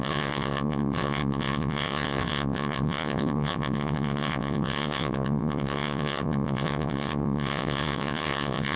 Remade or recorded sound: remade